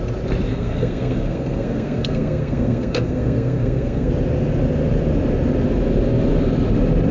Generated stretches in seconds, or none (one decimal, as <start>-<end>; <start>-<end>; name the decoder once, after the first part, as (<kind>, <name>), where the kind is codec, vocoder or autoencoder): 0.5-4.1 (codec, SNAC)